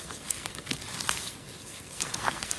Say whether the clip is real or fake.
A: fake